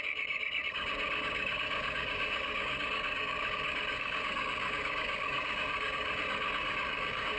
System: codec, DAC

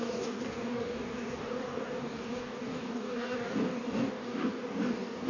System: codec, DAC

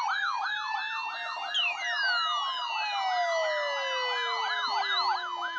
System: none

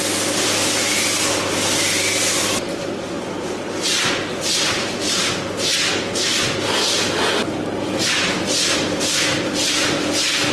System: none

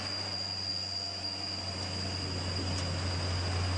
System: none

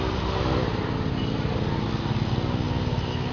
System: none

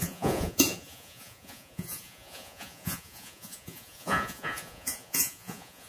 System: vocoder, Vocos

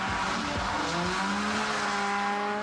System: none